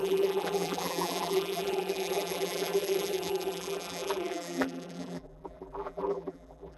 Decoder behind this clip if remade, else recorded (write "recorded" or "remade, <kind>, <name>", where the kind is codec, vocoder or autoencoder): remade, vocoder, BigVGAN v2